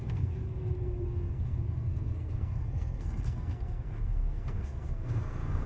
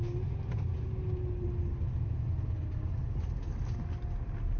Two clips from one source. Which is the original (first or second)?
second